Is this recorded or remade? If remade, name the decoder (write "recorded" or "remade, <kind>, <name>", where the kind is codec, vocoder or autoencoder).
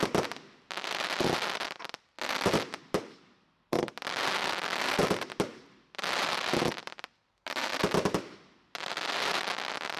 recorded